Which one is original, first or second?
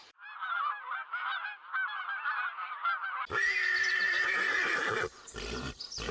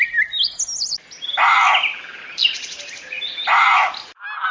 second